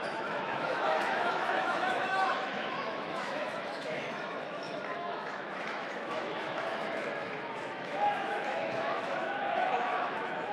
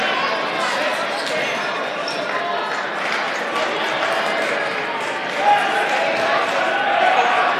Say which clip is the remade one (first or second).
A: first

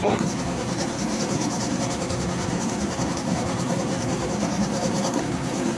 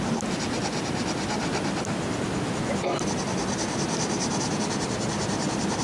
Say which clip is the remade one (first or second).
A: first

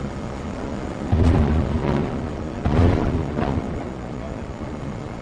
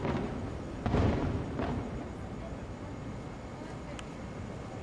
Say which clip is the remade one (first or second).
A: first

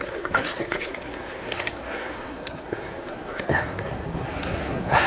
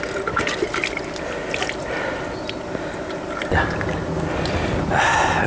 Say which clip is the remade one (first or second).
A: first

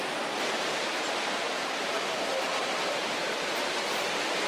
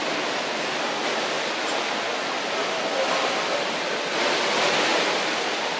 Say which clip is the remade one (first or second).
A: first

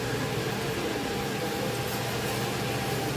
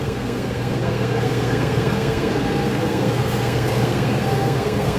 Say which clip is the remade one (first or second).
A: second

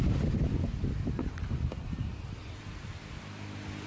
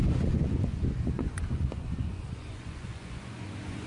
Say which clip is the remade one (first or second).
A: second